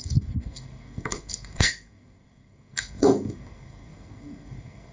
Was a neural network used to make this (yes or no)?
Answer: yes